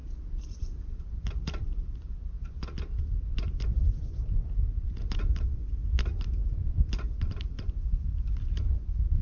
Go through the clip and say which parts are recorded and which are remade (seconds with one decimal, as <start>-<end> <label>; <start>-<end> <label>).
0.0-1.0 remade; 1.0-9.2 recorded